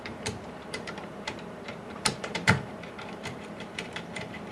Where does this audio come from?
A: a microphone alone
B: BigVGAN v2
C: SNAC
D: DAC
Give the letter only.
B